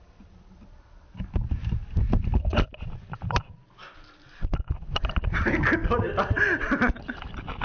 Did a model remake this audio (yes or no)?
no